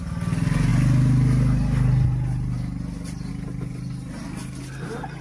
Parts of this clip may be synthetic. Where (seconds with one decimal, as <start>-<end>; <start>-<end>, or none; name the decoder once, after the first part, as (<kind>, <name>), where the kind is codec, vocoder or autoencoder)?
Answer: none